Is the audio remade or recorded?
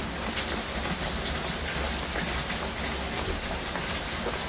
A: recorded